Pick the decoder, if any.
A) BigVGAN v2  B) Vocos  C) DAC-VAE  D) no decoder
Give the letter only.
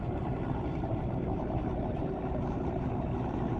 A